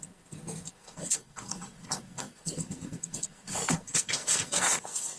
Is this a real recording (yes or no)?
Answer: no